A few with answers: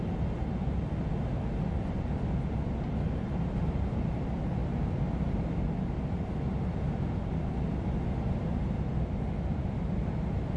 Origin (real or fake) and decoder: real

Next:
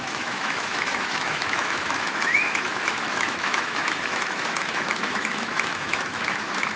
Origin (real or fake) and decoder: fake, autoencoder, DAC-VAE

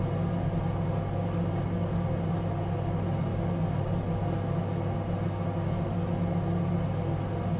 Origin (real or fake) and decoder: real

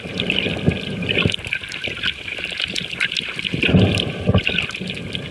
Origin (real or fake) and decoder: fake, vocoder, BigVGAN v2